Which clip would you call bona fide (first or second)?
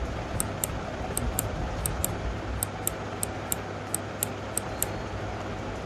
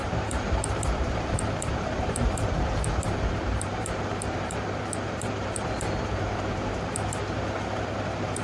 first